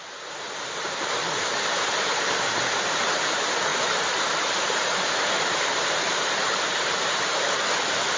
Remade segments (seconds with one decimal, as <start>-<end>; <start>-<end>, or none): 3.7-7.6